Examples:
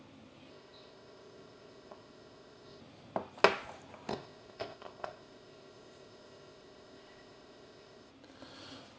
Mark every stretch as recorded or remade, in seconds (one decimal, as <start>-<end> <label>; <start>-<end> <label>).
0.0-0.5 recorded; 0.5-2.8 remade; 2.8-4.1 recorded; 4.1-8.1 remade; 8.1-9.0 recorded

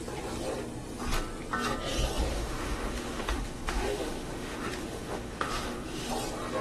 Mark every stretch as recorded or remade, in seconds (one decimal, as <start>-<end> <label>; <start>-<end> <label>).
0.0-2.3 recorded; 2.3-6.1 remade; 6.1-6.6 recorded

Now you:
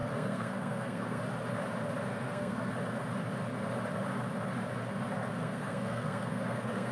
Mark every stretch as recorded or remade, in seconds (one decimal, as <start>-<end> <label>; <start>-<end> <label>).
0.0-1.2 remade; 1.2-2.1 recorded; 2.1-2.7 remade; 2.7-5.4 recorded; 5.4-6.9 remade